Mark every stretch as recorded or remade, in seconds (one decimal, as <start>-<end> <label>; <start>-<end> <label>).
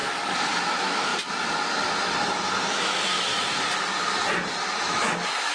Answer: 0.0-0.6 recorded; 0.6-1.1 remade; 1.1-2.7 recorded; 2.7-3.3 remade; 3.3-4.8 recorded; 4.8-5.5 remade